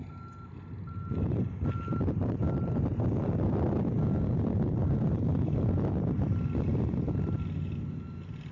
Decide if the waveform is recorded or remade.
recorded